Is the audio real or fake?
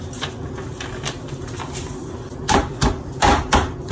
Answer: real